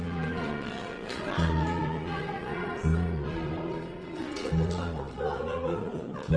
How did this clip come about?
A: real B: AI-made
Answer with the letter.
B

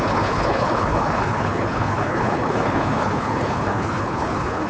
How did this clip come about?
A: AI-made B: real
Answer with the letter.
A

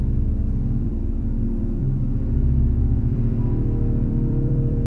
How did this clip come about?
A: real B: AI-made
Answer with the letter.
B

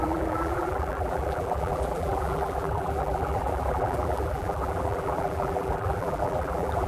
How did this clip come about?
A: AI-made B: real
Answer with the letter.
A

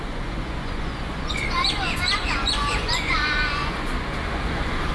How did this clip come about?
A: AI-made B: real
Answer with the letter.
A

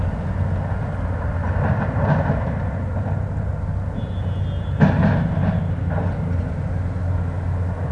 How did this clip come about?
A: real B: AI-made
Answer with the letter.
A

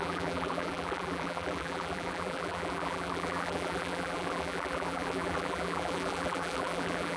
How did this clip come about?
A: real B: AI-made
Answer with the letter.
B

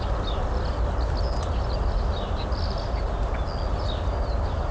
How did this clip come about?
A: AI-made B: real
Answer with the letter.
B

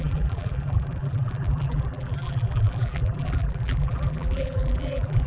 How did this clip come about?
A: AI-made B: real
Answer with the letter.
A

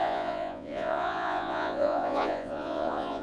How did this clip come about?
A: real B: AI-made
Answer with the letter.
B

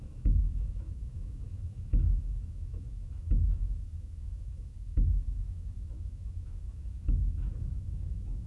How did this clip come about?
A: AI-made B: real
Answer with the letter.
A